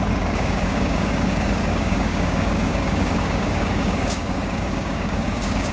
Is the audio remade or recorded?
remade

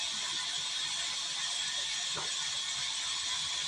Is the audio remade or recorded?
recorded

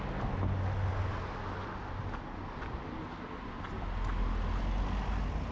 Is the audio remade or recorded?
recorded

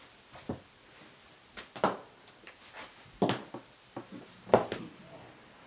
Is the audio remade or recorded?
recorded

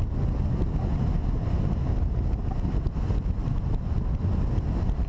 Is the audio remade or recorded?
recorded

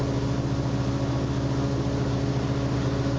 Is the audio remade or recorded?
recorded